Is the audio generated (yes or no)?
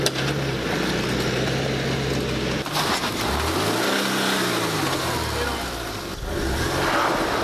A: no